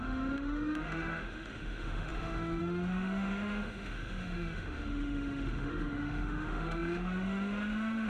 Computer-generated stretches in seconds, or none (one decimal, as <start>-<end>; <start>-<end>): 0.0-8.1